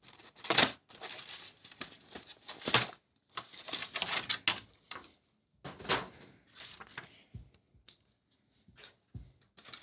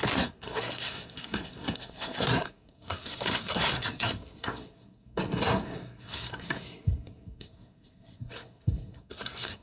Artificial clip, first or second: second